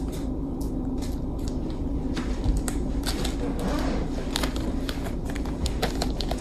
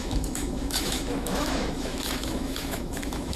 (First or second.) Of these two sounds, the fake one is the second